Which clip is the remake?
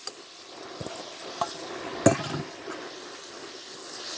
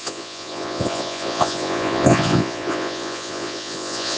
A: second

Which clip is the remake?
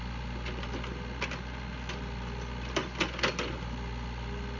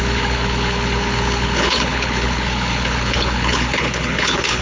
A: second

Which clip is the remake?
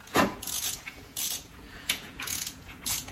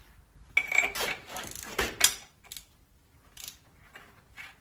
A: first